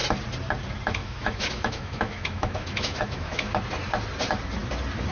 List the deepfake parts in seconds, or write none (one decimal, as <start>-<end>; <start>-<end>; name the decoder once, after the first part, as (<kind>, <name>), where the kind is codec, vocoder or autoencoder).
1.0-3.6 (autoencoder, DAC-VAE)